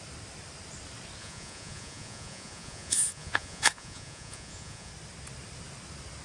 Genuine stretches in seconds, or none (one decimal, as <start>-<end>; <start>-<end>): 0.0-1.2; 4.9-6.2